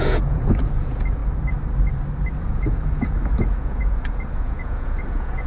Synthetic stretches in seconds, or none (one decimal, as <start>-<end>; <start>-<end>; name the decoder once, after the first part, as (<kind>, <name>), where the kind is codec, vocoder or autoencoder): 0.0-1.2 (vocoder, Vocos); 2.4-5.5